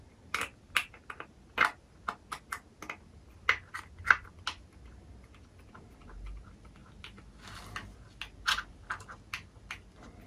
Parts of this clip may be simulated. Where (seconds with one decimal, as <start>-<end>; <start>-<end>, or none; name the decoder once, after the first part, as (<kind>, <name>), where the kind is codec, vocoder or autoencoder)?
none